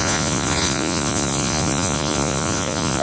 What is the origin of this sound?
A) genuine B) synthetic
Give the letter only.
B